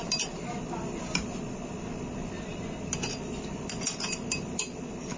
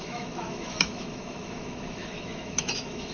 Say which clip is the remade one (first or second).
second